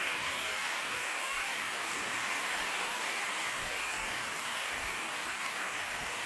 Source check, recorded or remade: remade